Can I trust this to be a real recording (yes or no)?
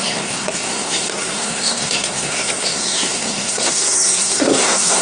no